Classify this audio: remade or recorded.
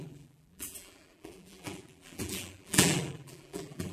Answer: remade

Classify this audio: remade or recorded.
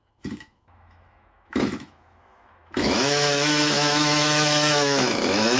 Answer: remade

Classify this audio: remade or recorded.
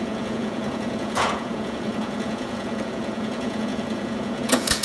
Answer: remade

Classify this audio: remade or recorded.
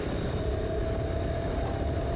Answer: recorded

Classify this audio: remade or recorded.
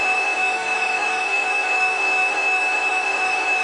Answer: remade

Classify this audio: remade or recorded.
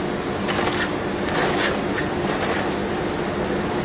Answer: recorded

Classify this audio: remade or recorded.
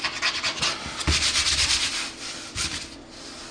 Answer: recorded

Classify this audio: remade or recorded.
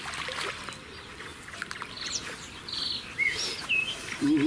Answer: recorded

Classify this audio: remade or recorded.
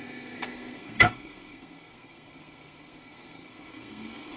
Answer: remade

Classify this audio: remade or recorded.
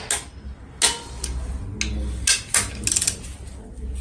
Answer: recorded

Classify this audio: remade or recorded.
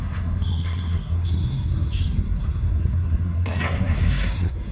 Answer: remade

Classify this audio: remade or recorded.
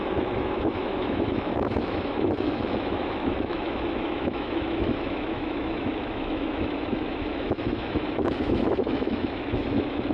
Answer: remade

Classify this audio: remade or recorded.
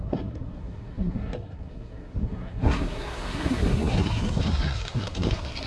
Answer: remade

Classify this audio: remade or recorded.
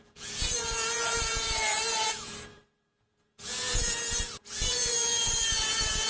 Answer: remade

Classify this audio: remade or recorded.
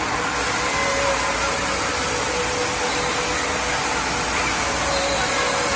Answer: recorded